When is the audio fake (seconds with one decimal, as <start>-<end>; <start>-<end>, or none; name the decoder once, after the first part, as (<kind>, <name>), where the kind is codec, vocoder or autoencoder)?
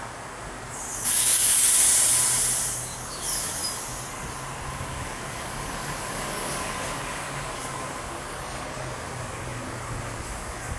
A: 0.0-1.5 (codec, DAC); 2.7-3.6; 4.7-10.8